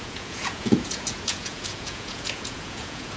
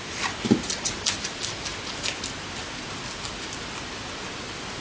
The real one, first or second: second